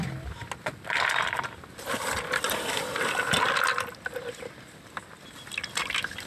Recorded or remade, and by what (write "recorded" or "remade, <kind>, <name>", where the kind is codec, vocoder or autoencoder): recorded